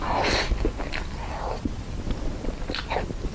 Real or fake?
real